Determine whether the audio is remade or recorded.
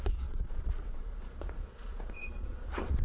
remade